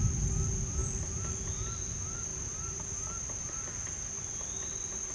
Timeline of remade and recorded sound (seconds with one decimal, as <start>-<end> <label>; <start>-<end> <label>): 0.0-2.3 recorded; 2.3-5.1 remade